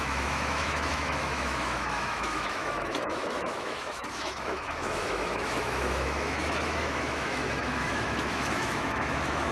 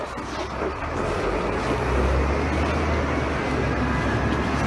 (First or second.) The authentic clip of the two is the second